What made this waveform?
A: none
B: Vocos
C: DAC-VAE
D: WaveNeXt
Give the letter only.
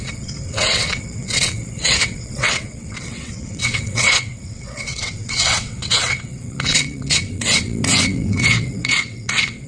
D